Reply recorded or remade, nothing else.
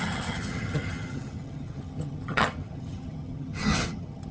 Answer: remade